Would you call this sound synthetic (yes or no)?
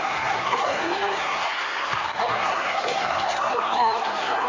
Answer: yes